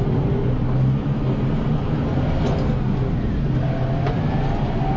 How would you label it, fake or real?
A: real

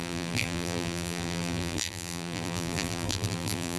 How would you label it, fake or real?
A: fake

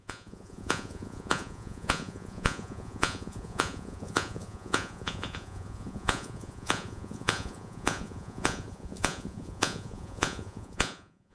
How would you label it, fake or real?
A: fake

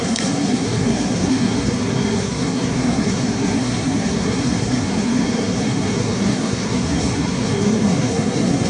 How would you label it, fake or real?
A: fake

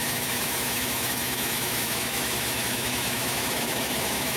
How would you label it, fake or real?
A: fake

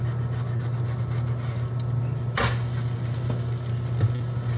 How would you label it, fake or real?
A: real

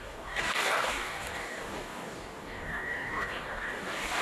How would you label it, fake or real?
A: fake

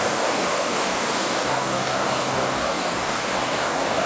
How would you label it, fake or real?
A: fake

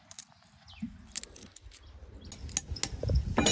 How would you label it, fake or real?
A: real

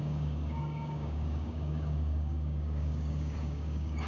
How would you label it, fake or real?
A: fake